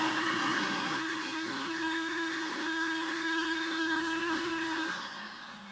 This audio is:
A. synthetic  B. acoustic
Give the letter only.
A